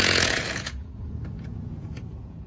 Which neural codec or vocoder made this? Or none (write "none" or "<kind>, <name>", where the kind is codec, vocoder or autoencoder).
vocoder, Vocos